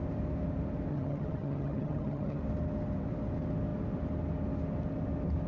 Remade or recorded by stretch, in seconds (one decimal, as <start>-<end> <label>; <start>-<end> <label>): 0.0-0.9 recorded; 0.9-2.4 remade; 2.4-5.5 recorded